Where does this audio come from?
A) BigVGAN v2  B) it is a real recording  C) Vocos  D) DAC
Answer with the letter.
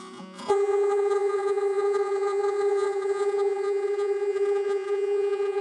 C